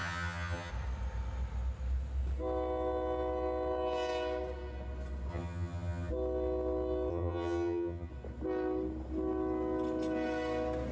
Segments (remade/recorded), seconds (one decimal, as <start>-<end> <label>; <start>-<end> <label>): 0.0-0.7 remade; 0.7-5.3 recorded; 5.3-6.1 remade; 6.1-7.1 recorded; 7.1-8.1 remade; 8.1-10.9 recorded